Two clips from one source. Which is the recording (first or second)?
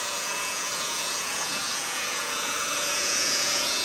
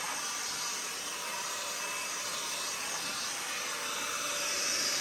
second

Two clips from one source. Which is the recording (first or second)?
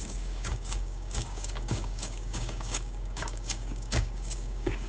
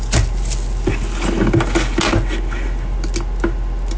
second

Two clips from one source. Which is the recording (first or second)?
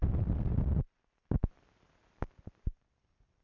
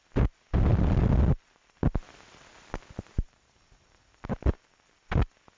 second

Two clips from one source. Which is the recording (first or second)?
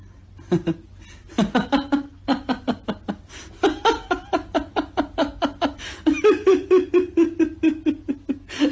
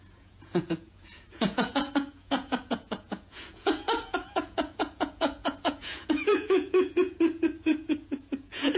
first